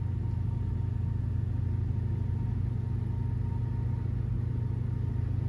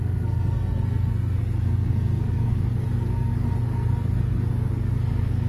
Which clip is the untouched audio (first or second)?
first